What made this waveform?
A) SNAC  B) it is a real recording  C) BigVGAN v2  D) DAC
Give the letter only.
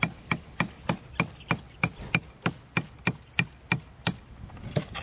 B